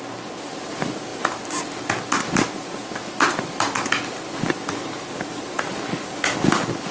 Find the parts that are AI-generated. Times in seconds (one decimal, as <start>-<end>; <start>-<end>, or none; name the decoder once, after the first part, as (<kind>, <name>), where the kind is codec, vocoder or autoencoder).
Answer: none